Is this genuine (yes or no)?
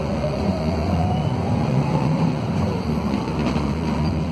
no